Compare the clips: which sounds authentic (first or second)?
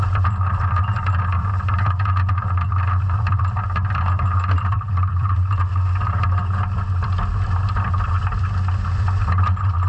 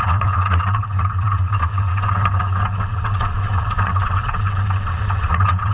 first